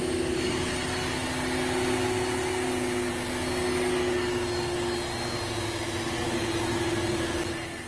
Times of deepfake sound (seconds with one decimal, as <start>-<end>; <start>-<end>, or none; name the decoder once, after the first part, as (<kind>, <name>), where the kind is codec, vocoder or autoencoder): none